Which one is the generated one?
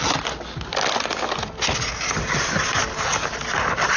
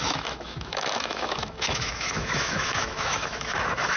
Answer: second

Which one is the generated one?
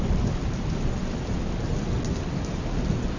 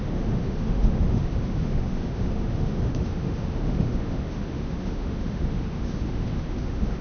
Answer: second